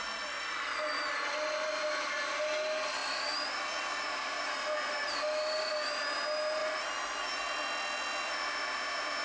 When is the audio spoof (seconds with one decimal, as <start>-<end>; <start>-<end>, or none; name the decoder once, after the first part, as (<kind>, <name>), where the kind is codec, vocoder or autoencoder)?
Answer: none